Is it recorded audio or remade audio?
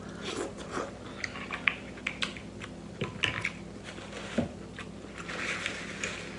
recorded